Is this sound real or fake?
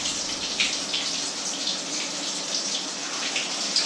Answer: real